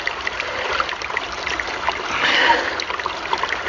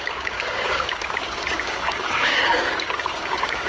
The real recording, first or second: first